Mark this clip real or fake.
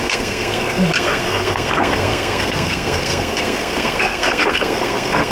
fake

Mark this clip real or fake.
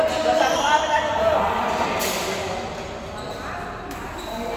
real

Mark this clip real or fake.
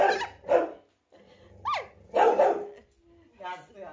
real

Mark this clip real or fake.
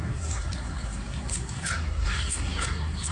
fake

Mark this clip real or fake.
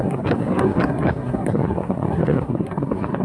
fake